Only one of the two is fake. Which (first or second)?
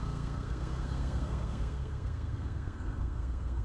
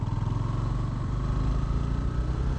first